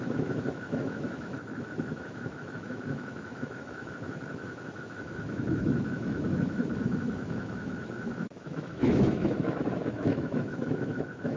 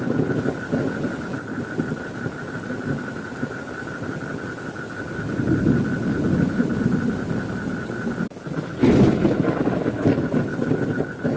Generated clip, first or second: first